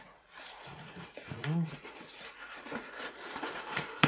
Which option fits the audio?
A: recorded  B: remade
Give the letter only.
B